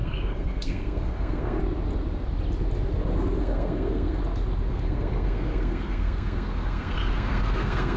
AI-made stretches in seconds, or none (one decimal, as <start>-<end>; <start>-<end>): 0.0-1.6; 3.4-4.2; 4.7-8.0